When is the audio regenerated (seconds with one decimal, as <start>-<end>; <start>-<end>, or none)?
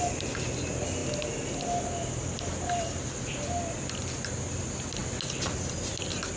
none